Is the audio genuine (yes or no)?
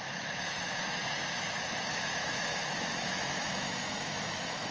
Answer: no